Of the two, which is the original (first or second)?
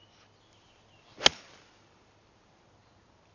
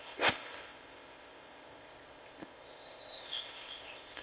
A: first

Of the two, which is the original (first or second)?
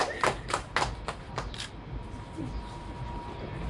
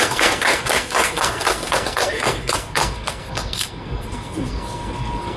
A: first